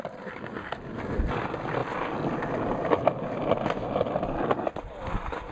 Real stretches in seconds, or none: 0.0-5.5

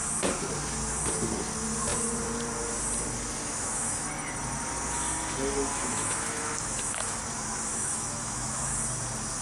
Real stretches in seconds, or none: 0.0-3.4; 4.1-5.7; 7.2-7.7; 8.8-9.4

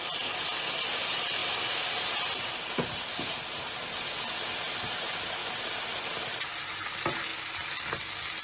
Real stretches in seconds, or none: 0.0-1.4; 2.0-7.3; 8.0-8.4